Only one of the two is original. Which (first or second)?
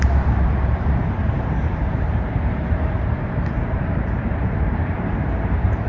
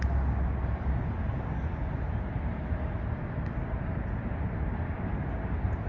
second